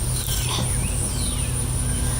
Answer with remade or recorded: recorded